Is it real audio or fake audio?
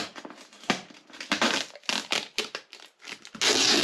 real